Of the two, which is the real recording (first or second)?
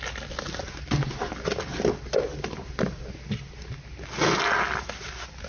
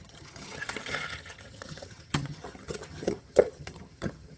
first